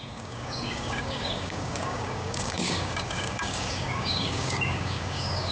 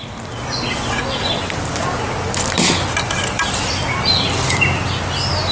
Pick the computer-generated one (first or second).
first